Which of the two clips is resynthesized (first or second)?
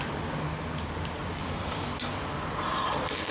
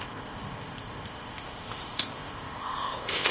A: second